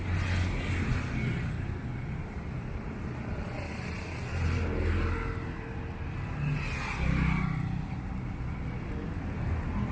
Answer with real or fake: real